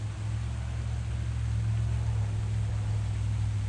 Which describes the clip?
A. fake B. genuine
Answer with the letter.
B